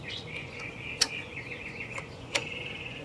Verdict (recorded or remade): remade